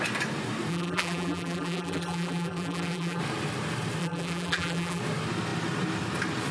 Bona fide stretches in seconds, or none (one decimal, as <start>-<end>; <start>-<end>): 0.0-0.7; 3.2-4.0; 5.0-6.5